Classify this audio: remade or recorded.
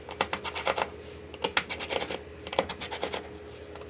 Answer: recorded